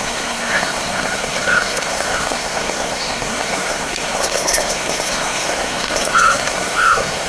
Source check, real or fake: fake